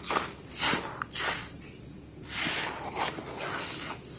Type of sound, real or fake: real